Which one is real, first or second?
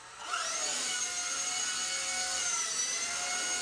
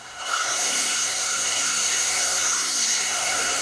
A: first